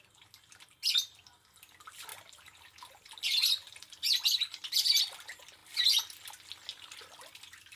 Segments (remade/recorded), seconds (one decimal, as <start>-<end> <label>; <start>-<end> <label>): 0.0-7.8 recorded